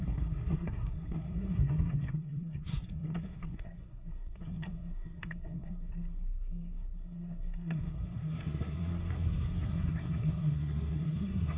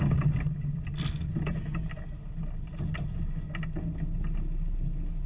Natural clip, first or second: second